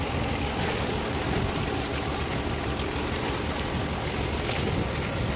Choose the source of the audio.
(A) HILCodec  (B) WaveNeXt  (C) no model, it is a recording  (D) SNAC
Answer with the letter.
C